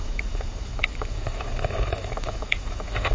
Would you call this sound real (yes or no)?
no